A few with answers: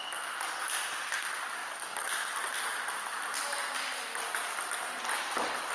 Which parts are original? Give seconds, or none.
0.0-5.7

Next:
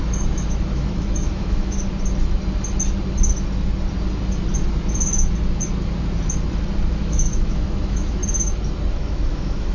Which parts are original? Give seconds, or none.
1.8-6.9; 8.2-8.9

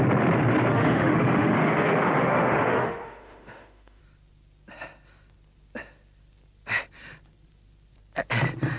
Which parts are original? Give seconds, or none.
0.0-0.7; 4.0-8.8

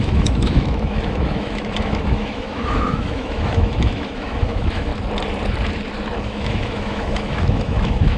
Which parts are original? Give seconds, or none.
4.9-6.2

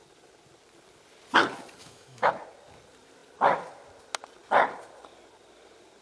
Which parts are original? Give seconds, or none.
0.0-1.8; 2.3-6.0

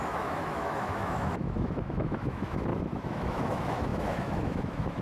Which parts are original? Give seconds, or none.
none

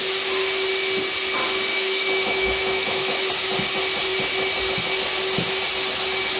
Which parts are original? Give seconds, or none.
0.0-1.7; 3.3-6.4